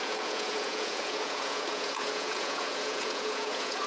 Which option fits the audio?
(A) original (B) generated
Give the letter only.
B